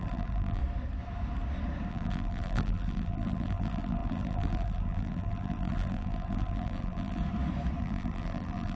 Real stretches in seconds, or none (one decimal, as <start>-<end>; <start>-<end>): 0.6-1.9; 7.2-7.8